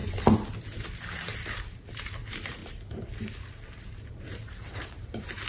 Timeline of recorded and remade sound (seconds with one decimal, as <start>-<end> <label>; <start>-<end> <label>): 0.0-1.5 recorded; 1.5-5.5 remade